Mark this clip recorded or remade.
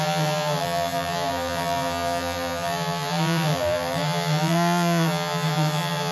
remade